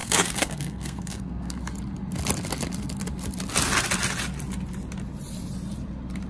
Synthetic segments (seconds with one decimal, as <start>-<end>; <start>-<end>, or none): 0.0-1.6